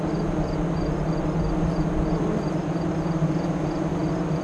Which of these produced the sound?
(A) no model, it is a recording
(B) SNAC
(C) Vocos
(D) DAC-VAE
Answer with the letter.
A